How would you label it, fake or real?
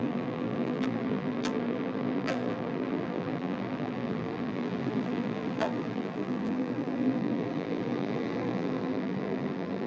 fake